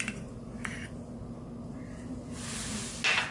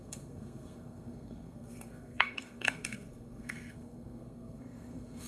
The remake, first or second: second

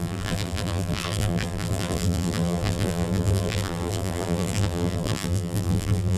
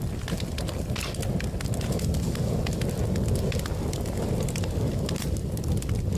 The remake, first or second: first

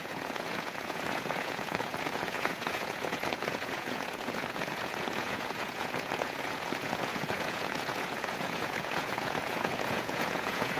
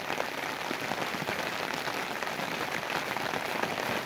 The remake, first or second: first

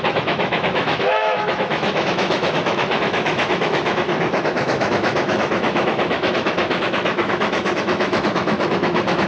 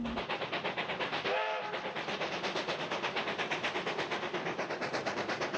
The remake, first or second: first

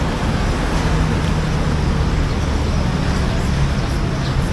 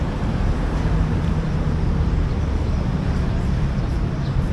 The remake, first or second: second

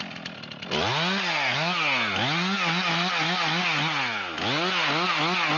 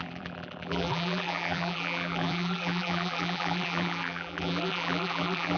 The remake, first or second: second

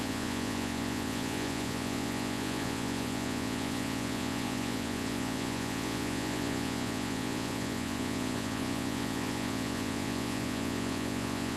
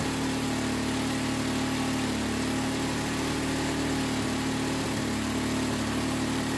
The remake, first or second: first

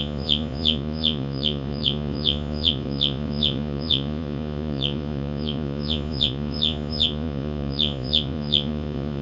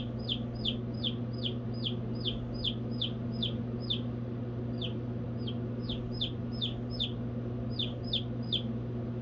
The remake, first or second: first